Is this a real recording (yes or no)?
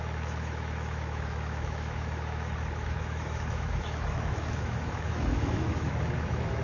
no